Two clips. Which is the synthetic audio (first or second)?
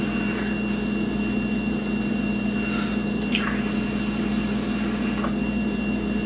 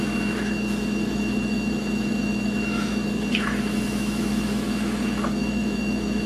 second